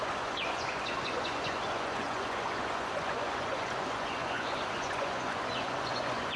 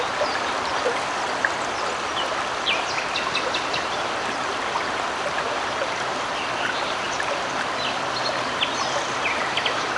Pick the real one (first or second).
second